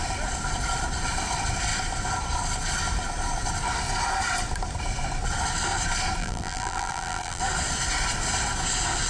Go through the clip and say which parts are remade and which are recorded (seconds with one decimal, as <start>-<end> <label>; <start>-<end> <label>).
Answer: 0.0-6.2 recorded; 6.2-7.4 remade; 7.4-9.1 recorded